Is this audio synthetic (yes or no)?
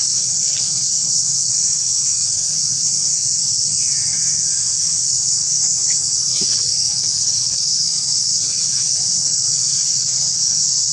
yes